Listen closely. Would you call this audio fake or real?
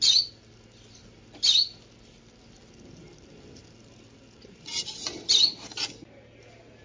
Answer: real